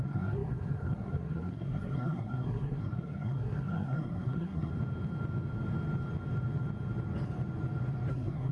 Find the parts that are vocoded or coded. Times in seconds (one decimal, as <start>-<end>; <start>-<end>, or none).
0.0-4.7; 8.1-8.5